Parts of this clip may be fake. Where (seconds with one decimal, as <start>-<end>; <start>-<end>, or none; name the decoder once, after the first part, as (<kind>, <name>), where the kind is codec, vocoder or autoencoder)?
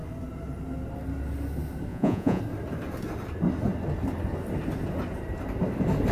1.9-2.4 (vocoder, Vocos)